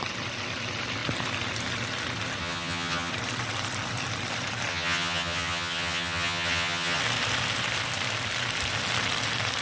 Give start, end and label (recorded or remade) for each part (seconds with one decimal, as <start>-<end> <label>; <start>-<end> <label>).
0.0-2.4 recorded; 2.4-3.1 remade; 3.1-4.7 recorded; 4.7-7.0 remade; 7.0-9.6 recorded